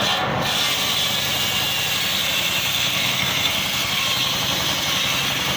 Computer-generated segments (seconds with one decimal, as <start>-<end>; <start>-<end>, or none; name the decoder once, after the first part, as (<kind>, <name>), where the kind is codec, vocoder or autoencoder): 2.7-4.0 (codec, SNAC)